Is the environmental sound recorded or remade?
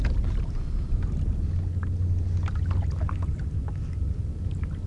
recorded